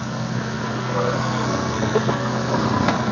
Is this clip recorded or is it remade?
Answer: remade